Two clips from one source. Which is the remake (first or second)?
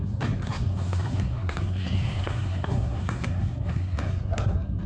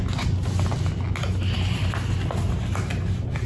first